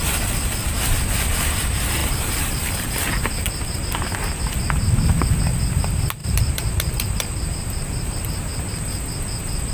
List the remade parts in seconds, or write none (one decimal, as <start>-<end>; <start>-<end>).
2.0-3.8; 6.2-8.2